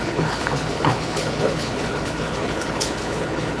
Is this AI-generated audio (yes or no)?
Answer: yes